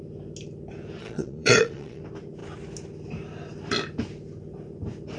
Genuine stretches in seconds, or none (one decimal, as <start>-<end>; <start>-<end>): 0.0-1.0; 2.0-5.2